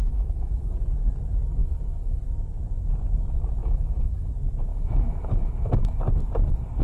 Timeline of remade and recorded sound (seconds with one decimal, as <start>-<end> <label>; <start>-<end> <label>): 0.0-0.6 remade; 0.6-1.6 recorded; 1.6-2.2 remade; 2.2-3.6 recorded; 3.6-4.3 remade; 4.3-4.7 recorded; 4.7-6.0 remade; 6.0-6.8 recorded